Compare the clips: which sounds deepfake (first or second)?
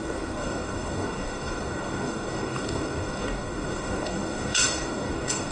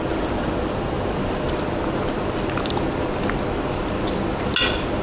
first